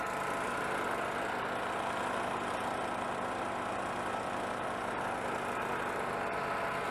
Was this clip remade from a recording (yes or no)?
no